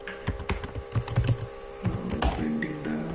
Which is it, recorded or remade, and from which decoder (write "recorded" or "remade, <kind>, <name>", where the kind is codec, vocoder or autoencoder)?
recorded